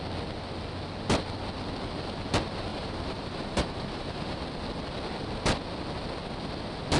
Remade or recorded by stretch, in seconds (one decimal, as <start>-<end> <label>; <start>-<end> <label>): 0.0-2.7 recorded; 2.7-4.4 remade; 4.4-7.0 recorded

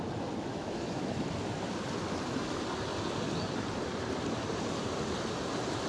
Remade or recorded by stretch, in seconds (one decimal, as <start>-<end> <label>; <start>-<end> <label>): 0.0-0.5 recorded; 0.5-1.1 remade; 1.1-5.9 recorded

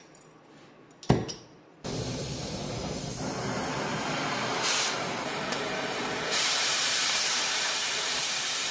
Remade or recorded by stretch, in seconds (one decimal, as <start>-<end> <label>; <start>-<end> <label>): 0.0-1.2 recorded; 1.2-2.8 remade; 2.8-3.9 recorded; 3.9-8.7 remade

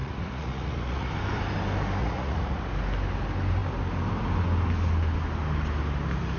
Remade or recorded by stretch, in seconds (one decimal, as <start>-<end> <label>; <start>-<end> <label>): 0.0-1.1 remade; 1.1-2.0 recorded; 2.0-2.6 remade; 2.6-6.4 recorded

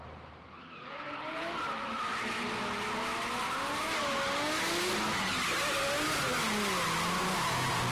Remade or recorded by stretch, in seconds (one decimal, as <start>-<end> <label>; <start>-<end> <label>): 0.0-7.9 recorded

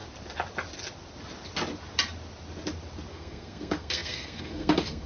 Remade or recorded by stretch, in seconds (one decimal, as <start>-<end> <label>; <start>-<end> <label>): 0.0-3.1 recorded; 3.1-5.1 remade

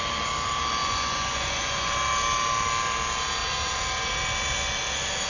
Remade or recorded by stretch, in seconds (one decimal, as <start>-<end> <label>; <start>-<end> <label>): 0.0-0.8 recorded; 0.8-1.9 remade; 1.9-5.3 recorded

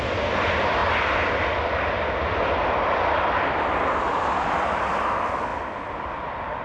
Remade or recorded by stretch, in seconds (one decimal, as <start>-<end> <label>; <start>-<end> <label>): 0.0-6.6 recorded